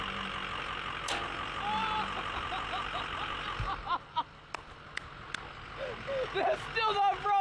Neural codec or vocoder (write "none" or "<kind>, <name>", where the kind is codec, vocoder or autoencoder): none